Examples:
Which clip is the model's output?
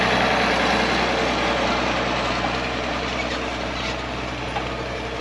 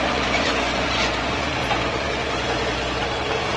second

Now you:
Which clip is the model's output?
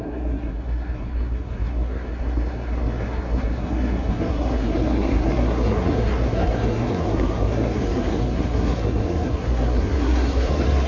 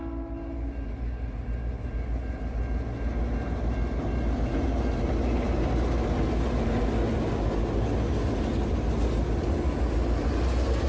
first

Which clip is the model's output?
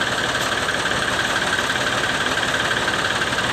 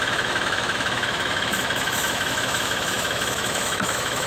second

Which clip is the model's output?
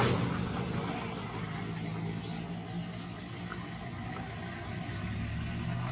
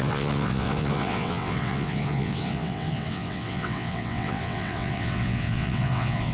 second